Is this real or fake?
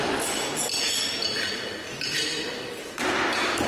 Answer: real